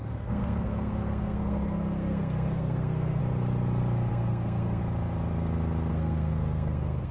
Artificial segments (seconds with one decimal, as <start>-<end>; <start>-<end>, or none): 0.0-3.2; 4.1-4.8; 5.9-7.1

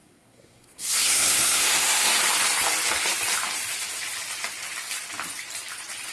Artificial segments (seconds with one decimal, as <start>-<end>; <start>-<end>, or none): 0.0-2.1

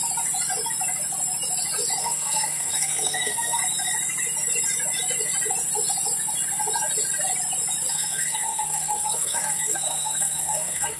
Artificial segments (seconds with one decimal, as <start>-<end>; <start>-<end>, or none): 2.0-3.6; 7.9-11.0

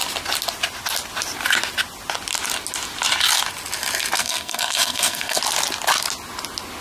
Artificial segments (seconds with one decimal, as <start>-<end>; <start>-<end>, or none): 4.2-5.4

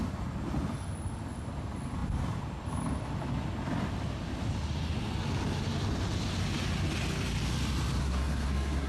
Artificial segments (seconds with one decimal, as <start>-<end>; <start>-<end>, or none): 8.0-8.9